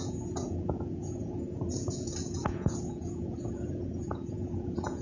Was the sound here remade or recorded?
remade